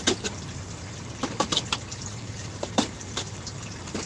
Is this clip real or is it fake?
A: fake